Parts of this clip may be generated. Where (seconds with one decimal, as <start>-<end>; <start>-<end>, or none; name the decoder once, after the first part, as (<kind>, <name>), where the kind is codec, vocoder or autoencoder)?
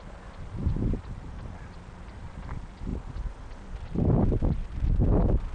0.6-2.3 (vocoder, BigVGAN v2)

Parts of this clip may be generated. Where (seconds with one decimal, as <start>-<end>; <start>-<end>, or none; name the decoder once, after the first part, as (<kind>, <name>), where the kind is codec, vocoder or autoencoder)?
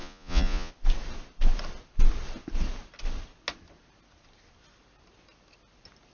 0.0-0.7 (vocoder, Vocos)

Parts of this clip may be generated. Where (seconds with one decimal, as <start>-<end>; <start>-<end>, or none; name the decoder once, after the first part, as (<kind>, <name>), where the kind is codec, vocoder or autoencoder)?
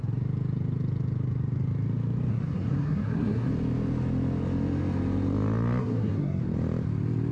2.3-3.5 (codec, SNAC); 5.8-6.4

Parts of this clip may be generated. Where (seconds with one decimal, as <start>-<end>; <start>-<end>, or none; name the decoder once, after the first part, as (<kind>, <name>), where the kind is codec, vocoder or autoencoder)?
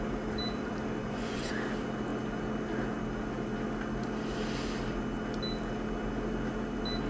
1.0-1.5 (vocoder, Vocos)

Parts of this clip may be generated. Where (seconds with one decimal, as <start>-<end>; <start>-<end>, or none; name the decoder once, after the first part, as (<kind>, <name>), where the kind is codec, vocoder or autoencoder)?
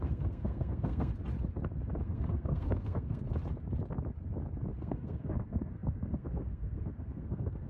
0.0-1.1 (codec, SNAC); 2.0-3.2; 4.8-7.7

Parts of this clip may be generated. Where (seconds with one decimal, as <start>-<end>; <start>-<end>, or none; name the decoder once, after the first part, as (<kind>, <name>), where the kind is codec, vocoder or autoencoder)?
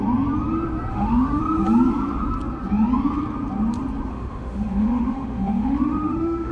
0.9-1.4 (autoencoder, DAC-VAE); 4.1-6.5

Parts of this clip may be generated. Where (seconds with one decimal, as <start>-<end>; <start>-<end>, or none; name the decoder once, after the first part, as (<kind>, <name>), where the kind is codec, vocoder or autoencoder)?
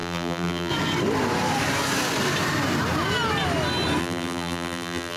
0.0-0.7 (vocoder, BigVGAN v2); 4.0-5.2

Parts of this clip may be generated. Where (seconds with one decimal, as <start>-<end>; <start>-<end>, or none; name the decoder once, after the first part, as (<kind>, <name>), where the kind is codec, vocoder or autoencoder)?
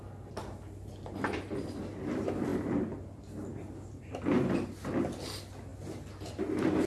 none